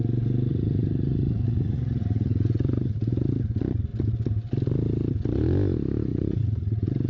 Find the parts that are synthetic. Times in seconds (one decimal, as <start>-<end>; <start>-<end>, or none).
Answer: 0.5-3.3; 6.1-7.1